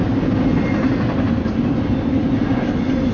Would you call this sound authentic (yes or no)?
yes